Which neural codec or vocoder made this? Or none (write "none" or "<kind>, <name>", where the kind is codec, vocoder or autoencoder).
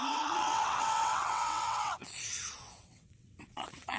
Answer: vocoder, WaveNeXt